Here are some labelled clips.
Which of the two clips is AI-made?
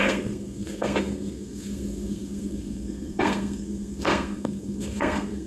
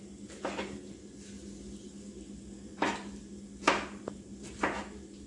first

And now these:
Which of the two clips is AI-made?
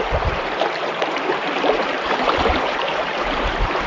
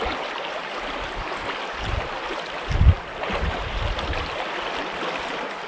first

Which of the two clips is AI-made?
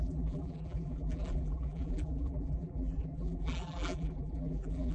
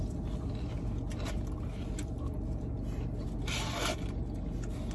first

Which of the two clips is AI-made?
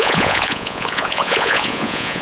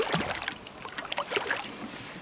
first